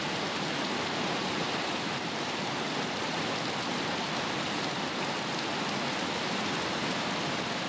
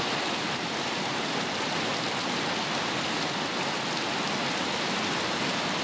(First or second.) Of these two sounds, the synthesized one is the first